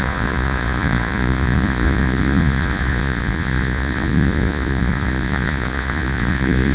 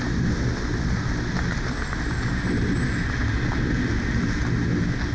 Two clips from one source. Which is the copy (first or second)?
first